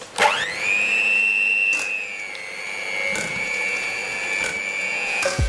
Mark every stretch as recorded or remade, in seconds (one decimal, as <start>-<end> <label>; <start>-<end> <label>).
0.0-3.3 recorded; 3.3-4.0 remade; 4.0-4.8 recorded; 4.8-5.5 remade